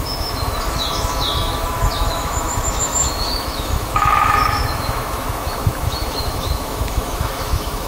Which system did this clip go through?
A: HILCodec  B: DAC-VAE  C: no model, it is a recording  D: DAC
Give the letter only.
B